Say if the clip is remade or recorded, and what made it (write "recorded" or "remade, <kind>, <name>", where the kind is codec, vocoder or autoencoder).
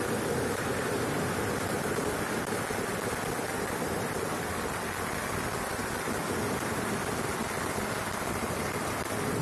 recorded